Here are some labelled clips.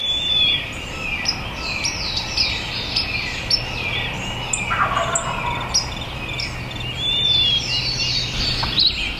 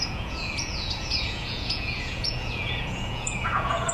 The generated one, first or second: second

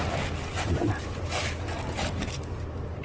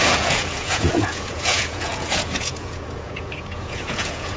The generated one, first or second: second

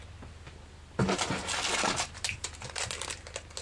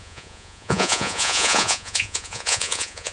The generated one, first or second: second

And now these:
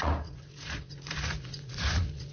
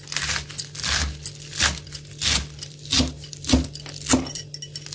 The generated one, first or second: first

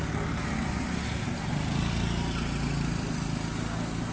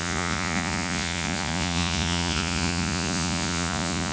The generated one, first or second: second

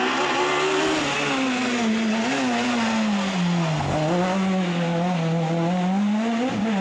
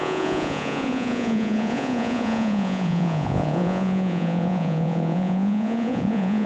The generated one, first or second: second